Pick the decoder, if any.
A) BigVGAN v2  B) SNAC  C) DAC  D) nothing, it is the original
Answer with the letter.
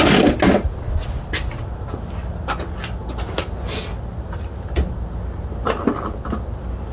D